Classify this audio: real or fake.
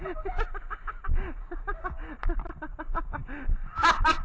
real